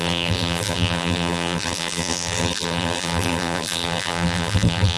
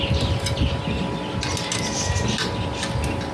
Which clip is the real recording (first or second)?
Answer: second